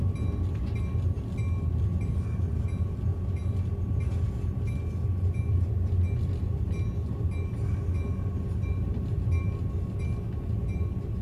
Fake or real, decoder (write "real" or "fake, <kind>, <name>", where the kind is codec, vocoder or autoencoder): real